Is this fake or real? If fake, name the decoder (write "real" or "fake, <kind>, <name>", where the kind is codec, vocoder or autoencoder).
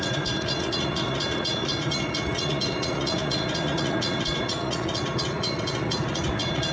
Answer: fake, vocoder, Vocos